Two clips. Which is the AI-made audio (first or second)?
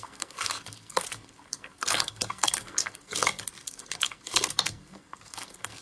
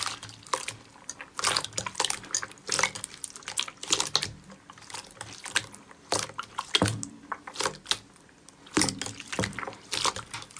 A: first